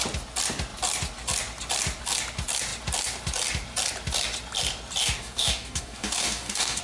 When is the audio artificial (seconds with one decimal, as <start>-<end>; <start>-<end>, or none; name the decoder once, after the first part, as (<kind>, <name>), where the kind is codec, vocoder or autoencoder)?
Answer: 5.0-6.8 (codec, DAC)